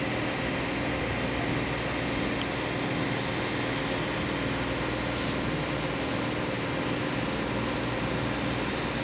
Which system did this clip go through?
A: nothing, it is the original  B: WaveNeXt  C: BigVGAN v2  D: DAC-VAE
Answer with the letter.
A